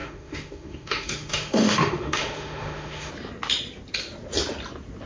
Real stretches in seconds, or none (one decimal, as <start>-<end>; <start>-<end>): 3.1-5.1